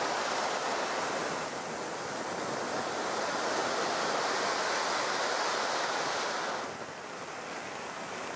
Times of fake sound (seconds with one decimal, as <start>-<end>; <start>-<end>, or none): 1.2-1.9; 3.6-6.6